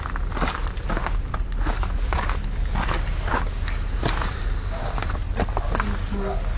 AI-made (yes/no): no